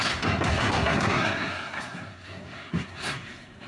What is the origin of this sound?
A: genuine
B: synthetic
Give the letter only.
B